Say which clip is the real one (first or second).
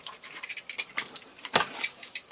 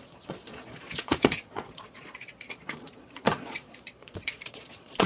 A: first